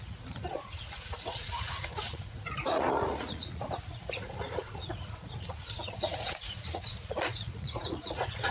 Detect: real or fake fake